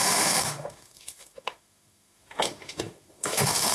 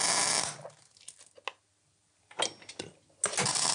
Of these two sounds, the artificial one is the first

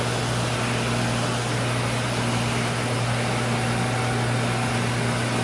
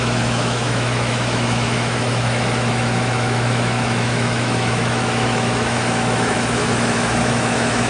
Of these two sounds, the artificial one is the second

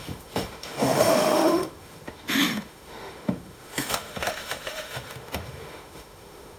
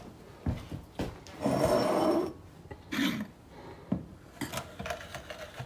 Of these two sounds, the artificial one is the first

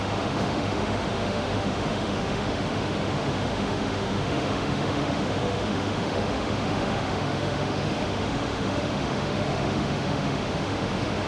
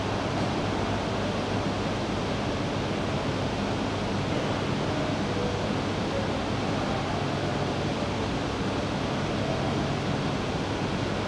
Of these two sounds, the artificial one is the first